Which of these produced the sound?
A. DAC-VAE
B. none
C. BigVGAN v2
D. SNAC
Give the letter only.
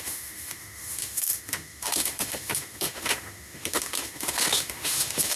A